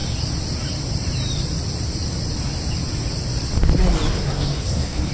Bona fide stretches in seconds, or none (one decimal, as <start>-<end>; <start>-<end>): 0.0-4.1